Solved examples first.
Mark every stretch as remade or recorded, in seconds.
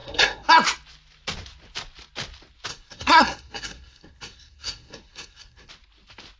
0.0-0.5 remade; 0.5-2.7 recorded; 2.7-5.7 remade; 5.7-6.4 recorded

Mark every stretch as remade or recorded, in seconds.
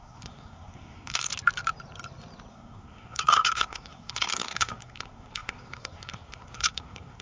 0.0-1.3 remade; 1.3-2.5 recorded; 2.5-7.2 remade